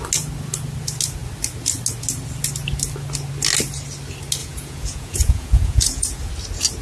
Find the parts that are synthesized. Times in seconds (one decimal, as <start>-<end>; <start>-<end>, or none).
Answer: 4.4-6.3